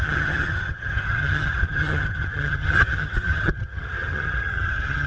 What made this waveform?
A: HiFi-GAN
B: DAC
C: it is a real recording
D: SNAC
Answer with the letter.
A